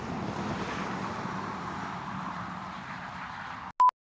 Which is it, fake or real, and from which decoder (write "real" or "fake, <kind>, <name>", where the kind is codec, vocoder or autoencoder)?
real